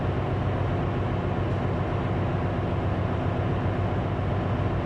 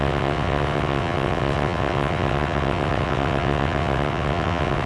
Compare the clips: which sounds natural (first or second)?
first